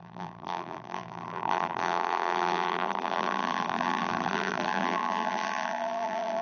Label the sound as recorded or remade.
remade